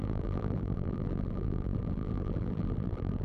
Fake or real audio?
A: fake